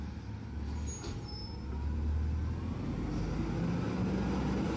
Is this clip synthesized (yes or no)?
no